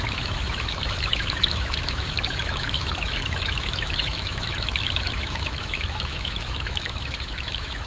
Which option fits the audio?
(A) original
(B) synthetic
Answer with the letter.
B